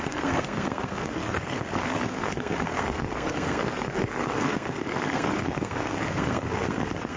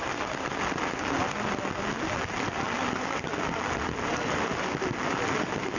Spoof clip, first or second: first